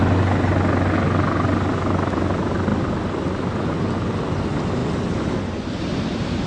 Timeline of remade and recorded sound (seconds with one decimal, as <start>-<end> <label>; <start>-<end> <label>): 0.0-6.5 recorded